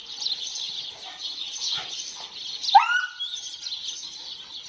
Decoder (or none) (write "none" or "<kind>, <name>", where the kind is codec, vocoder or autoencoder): none